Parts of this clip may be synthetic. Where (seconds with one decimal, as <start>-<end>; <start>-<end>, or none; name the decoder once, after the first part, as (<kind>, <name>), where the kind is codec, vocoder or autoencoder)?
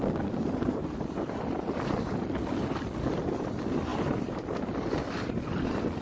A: none